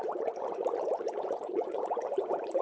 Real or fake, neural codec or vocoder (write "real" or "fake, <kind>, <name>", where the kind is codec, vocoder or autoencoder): fake, vocoder, Vocos